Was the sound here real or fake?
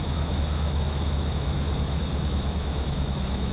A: fake